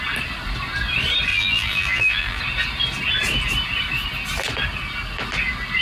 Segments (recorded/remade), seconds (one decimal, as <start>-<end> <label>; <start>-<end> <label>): 0.0-1.3 recorded; 1.3-2.4 remade; 2.4-5.8 recorded